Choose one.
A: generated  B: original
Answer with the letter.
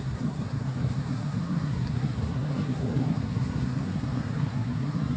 A